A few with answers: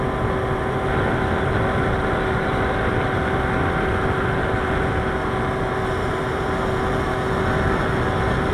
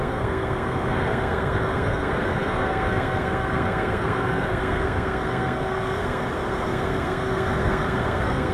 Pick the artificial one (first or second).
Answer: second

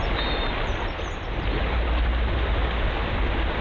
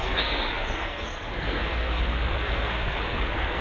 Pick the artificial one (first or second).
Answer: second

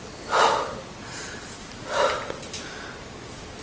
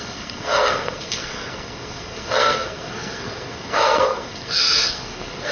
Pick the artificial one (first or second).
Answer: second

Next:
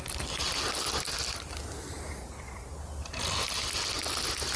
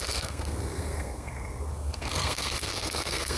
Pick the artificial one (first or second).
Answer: second